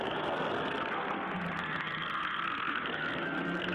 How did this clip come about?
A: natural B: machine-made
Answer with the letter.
B